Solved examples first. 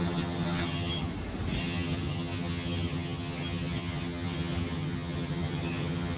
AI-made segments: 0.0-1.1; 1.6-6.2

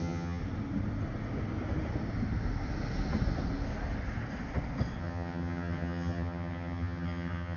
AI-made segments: 0.0-0.4; 5.0-7.6

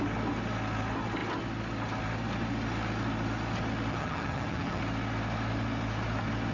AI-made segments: 3.9-4.8

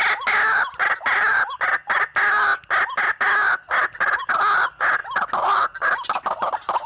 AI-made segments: none

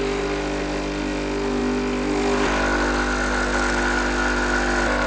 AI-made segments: none

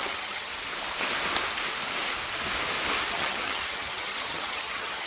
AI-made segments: 0.0-0.5; 3.1-5.1